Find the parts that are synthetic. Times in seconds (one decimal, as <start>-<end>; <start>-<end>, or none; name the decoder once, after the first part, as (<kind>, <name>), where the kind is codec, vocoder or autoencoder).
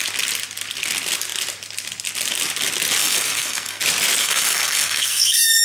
3.0-3.8 (codec, SNAC); 4.2-5.6